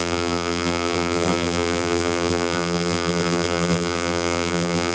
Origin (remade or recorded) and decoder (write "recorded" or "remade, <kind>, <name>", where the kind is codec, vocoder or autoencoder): remade, vocoder, BigVGAN v2